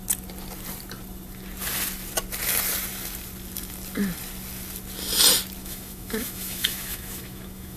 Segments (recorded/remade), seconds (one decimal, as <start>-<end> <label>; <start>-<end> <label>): 0.0-5.6 recorded; 5.6-7.8 remade